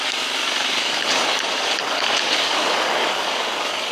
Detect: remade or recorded remade